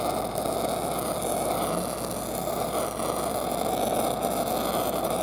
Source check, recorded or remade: recorded